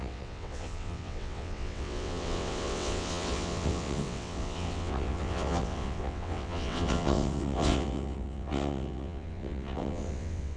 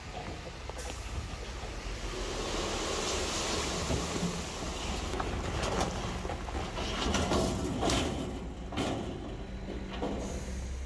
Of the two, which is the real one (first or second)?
second